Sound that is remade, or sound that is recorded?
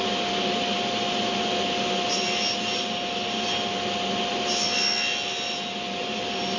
recorded